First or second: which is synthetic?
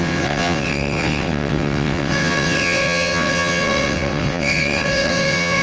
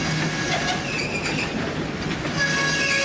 first